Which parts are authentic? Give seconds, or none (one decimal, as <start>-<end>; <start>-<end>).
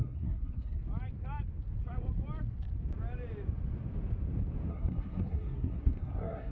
0.8-4.7